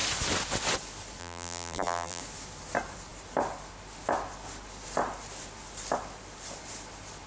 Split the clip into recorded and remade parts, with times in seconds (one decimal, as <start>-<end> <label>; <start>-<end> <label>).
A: 0.0-1.2 recorded; 1.2-2.2 remade; 2.2-7.3 recorded